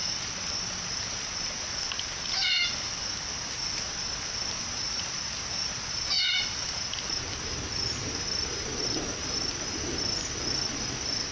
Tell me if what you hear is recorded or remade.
recorded